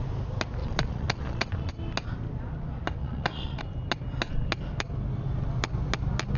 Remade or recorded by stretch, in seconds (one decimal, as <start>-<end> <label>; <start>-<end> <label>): 0.0-0.6 recorded; 0.6-1.7 remade; 1.7-3.0 recorded; 3.0-3.6 remade; 3.6-6.4 recorded